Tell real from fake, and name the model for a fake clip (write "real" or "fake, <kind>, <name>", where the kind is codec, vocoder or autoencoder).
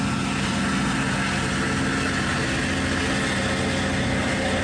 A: real